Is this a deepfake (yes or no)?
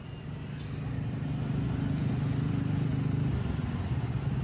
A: no